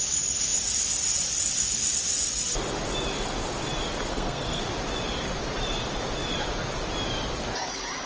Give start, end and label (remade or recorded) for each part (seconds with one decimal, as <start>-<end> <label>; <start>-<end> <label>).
0.0-4.1 recorded; 4.1-4.6 remade; 4.6-8.1 recorded